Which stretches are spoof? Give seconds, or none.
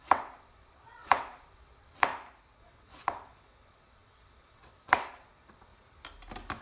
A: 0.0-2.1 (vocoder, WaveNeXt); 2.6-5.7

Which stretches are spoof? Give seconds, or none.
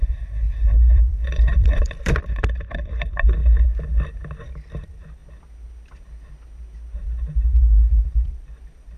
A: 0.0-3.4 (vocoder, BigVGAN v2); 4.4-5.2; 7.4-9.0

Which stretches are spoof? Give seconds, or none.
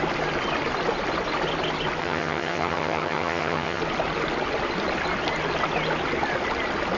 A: 2.0-3.8 (vocoder, HiFi-GAN)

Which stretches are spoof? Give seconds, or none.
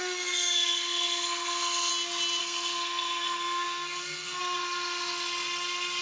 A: 0.0-1.9 (codec, SNAC); 2.4-4.4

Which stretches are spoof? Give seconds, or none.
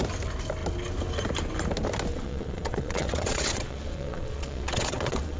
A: 2.1-5.4 (vocoder, WaveNeXt)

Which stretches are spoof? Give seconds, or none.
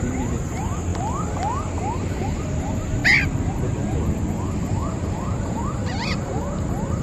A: 0.0-0.9 (vocoder, BigVGAN v2); 2.1-3.0; 4.6-7.0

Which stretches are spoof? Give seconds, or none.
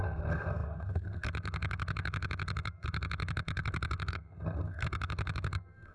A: 0.0-5.9 (codec, SNAC)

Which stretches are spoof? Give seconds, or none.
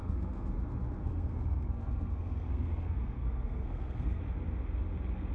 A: 0.0-0.6 (codec, SNAC); 1.0-4.2